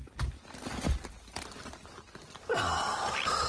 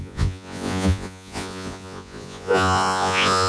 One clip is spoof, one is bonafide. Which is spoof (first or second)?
second